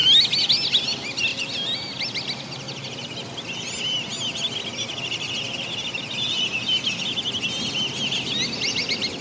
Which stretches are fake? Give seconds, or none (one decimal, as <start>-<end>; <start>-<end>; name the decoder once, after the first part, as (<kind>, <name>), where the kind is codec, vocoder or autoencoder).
none